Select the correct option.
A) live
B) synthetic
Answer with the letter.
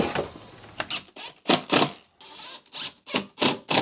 A